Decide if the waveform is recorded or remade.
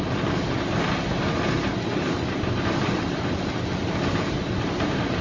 recorded